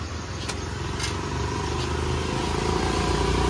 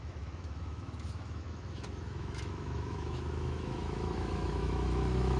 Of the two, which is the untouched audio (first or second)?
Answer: first